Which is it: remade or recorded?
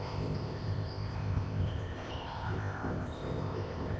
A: remade